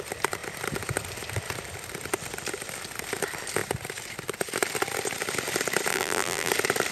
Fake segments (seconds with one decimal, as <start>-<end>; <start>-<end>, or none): 5.9-6.5